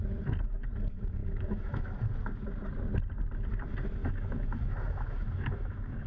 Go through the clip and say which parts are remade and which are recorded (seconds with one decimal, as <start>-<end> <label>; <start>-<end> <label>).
0.0-1.2 recorded; 1.2-1.8 remade; 1.8-4.0 recorded; 4.0-6.1 remade